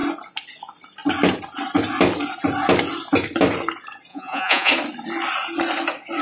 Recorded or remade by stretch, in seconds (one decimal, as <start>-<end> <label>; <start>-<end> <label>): 0.0-4.1 recorded; 4.1-4.7 remade; 4.7-6.2 recorded